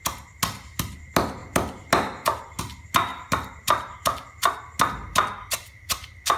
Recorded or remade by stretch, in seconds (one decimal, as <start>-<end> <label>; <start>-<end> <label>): 0.0-6.4 recorded